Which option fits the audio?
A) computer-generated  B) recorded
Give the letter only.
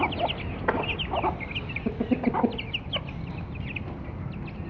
B